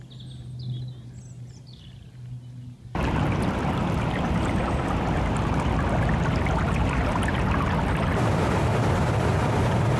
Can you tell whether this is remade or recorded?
recorded